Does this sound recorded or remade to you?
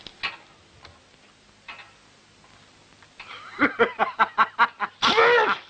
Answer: recorded